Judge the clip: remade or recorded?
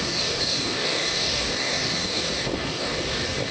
remade